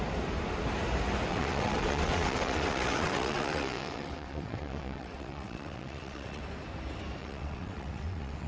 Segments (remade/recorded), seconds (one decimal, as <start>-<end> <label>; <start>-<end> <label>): 0.0-1.3 recorded; 1.3-6.4 remade; 6.4-7.2 recorded; 7.2-8.5 remade